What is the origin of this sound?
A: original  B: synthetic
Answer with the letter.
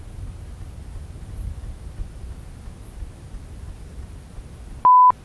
A